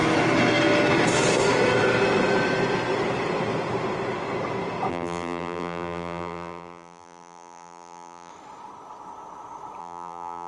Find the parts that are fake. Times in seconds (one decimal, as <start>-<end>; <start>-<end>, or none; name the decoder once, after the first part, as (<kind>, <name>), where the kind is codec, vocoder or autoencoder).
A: 4.9-8.3 (vocoder, BigVGAN v2); 9.8-10.5